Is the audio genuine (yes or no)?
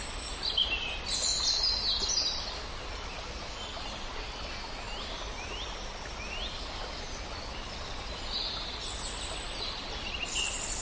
yes